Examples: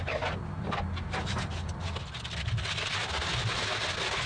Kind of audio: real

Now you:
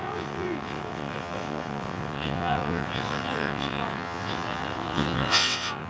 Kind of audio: fake